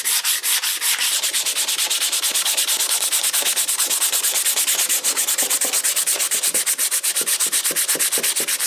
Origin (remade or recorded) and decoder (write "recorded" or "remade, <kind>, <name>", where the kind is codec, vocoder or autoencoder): recorded